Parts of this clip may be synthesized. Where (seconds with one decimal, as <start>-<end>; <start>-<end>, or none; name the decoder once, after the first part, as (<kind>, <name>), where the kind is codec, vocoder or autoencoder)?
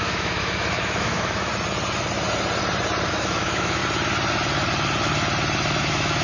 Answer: 0.0-1.5 (autoencoder, DAC-VAE); 3.1-3.8; 5.8-6.2